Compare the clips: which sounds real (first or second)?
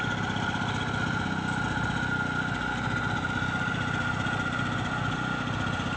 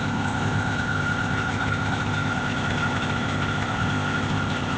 first